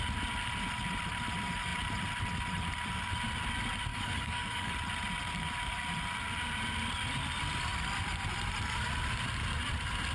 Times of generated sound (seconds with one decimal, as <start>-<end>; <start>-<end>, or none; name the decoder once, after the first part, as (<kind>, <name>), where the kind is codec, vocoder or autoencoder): 3.9-4.7 (codec, DAC)